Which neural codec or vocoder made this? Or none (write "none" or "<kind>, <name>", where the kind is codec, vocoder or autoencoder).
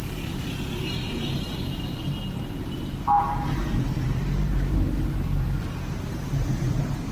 vocoder, BigVGAN v2